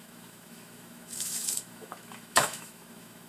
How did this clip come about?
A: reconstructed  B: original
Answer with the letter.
A